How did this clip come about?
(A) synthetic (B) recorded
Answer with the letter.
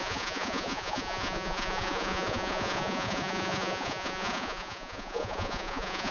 A